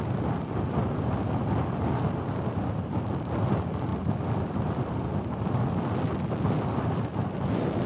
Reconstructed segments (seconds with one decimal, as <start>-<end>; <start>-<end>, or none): none